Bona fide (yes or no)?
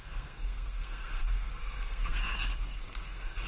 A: no